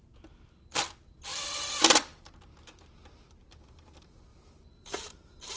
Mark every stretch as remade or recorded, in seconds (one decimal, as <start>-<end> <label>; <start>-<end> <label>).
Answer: 0.0-4.3 recorded; 4.3-5.6 remade